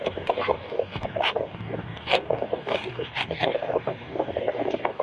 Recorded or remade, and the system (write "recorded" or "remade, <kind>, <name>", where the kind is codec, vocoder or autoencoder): remade, codec, DAC